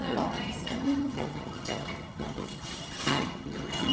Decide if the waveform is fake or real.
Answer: fake